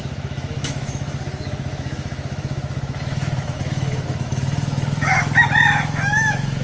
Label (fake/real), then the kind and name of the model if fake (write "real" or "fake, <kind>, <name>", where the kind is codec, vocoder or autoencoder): fake, autoencoder, DAC-VAE